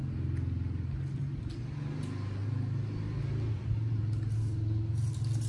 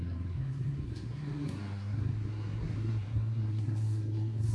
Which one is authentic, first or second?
first